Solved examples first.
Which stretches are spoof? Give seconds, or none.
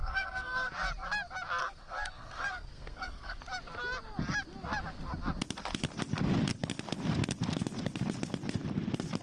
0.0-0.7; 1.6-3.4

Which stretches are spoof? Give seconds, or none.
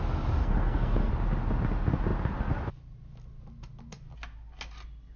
0.4-1.1